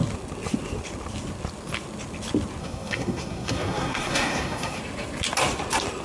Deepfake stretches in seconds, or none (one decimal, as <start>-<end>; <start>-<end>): 2.6-4.8